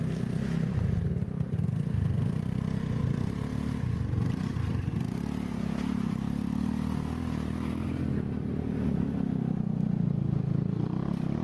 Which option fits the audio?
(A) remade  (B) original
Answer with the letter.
B